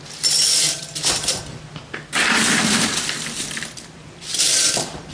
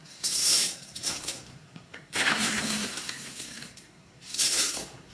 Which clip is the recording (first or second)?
first